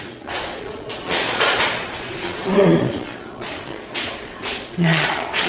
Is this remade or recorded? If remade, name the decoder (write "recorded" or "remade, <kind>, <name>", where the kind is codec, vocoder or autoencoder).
remade, vocoder, Vocos